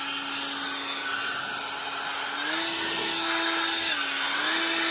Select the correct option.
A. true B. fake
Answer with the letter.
A